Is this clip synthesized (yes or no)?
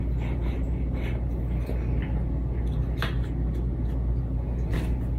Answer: no